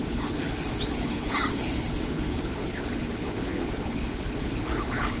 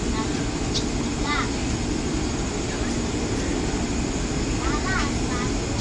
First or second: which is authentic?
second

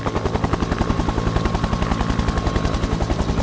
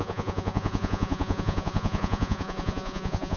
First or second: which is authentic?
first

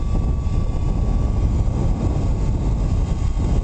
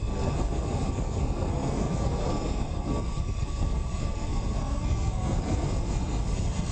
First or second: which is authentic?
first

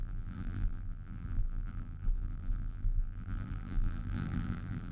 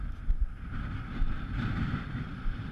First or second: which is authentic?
second